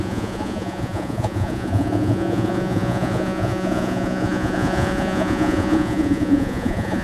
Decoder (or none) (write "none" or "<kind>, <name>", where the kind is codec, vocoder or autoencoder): vocoder, Vocos